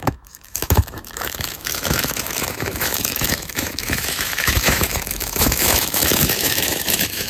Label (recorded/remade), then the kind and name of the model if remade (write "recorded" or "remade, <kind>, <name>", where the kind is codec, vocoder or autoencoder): remade, autoencoder, DAC-VAE